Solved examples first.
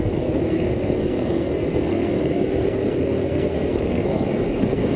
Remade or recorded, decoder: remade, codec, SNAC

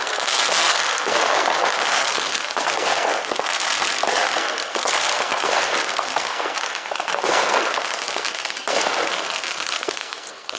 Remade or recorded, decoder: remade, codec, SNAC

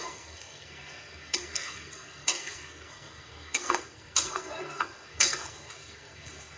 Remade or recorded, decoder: remade, codec, SNAC